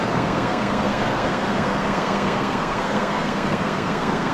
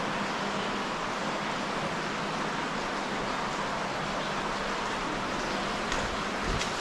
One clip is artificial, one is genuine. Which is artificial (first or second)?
first